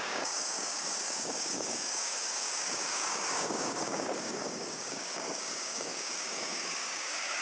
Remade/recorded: remade